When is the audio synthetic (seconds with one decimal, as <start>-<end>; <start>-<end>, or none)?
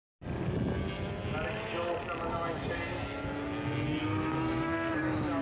4.0-4.9